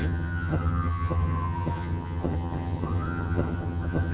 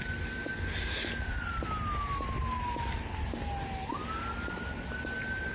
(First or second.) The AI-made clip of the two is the first